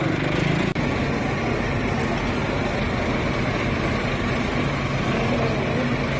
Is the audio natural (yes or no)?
yes